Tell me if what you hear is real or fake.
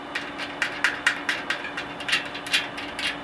real